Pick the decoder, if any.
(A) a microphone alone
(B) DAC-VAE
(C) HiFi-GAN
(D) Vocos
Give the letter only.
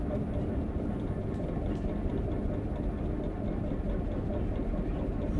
A